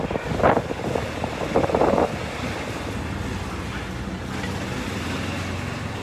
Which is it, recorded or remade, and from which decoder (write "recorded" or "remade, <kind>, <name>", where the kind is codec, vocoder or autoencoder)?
recorded